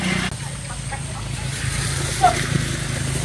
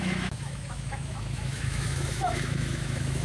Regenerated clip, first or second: second